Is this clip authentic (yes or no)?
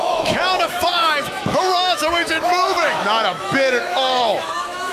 no